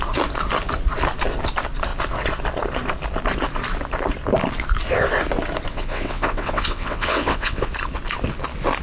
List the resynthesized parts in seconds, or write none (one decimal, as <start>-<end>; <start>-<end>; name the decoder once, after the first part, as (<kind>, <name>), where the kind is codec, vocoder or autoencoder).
5.7-7.7 (vocoder, WaveNeXt)